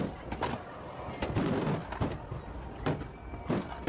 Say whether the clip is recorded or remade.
recorded